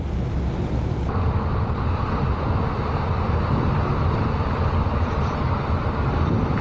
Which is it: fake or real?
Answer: fake